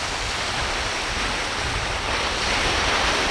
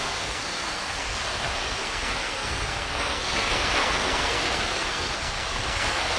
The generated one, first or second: second